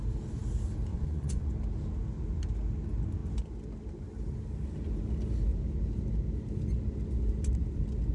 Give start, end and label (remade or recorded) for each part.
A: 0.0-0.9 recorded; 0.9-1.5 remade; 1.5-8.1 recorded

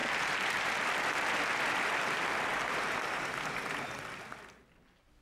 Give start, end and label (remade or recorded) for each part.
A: 0.0-0.9 remade; 0.9-2.5 recorded; 2.5-3.3 remade; 3.3-5.2 recorded

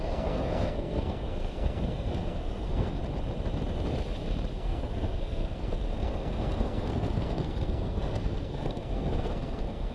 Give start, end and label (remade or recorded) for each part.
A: 0.0-3.0 remade; 3.0-4.5 recorded; 4.5-9.9 remade

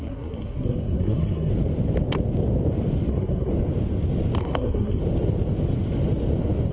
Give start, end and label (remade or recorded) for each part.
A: 0.0-1.5 remade; 1.5-3.1 recorded; 3.1-3.5 remade; 3.5-4.4 recorded; 4.4-5.0 remade; 5.0-6.7 recorded

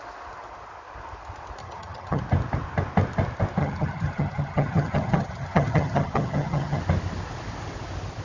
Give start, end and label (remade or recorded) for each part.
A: 0.0-1.6 recorded; 1.6-2.2 remade; 2.2-3.6 recorded; 3.6-6.8 remade; 6.8-8.2 recorded

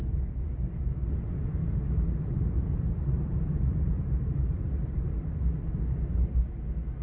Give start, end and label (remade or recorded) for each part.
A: 0.0-1.6 recorded; 1.6-5.8 remade; 5.8-7.0 recorded